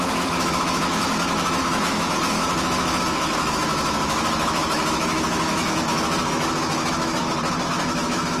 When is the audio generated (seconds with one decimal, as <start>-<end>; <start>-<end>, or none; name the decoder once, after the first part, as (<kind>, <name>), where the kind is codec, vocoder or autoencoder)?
0.0-7.2 (autoencoder, DAC-VAE); 7.7-8.4